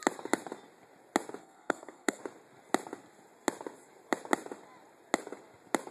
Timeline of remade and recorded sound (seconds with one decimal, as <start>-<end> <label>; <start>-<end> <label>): 0.0-1.4 recorded; 1.4-2.2 remade; 2.2-5.9 recorded